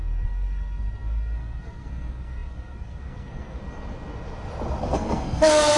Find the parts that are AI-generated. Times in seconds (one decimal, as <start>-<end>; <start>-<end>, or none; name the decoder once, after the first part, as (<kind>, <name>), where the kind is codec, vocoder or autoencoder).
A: 0.0-3.6 (codec, SNAC); 4.8-5.8